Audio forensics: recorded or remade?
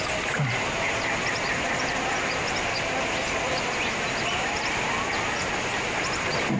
recorded